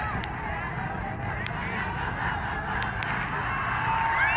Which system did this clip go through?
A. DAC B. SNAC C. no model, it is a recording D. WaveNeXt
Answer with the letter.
C